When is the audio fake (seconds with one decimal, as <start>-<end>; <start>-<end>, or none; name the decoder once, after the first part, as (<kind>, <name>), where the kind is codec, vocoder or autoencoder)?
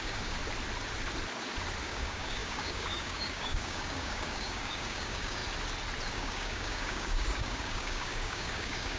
0.0-0.4 (codec, DAC); 1.8-5.4; 6.1-9.0